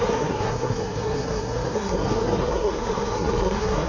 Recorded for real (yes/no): no